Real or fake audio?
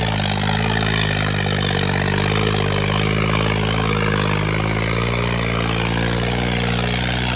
real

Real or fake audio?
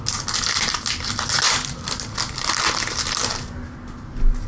real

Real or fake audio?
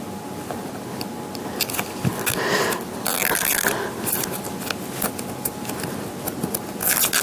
real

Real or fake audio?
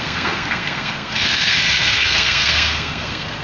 fake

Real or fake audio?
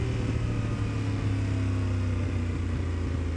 real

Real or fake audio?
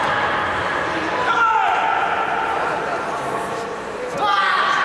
real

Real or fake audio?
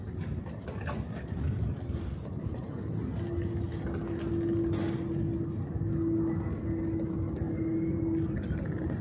real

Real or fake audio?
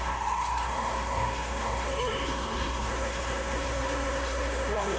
fake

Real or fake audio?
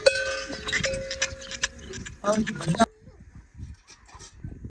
real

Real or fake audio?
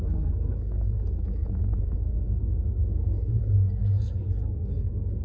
fake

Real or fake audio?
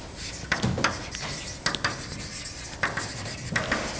real